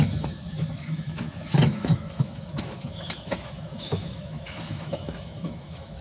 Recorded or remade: remade